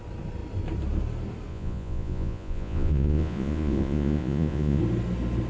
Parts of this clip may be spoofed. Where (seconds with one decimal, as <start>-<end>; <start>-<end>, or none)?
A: 1.5-4.8